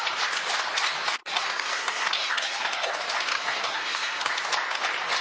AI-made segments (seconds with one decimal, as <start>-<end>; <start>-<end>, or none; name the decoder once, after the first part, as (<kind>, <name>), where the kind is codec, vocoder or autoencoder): 1.2-2.9 (codec, SNAC); 3.3-4.3

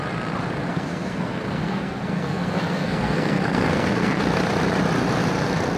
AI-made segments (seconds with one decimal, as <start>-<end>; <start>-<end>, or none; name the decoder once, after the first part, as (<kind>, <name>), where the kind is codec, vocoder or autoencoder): 0.7-4.2 (codec, SNAC)

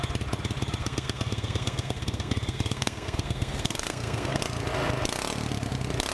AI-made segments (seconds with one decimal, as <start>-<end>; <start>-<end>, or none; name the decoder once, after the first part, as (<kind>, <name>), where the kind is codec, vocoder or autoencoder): 0.8-4.4 (codec, SNAC)

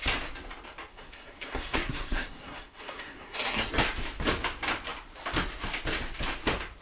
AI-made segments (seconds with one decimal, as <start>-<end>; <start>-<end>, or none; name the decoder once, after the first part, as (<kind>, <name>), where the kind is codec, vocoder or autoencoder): 0.9-3.7 (codec, SNAC)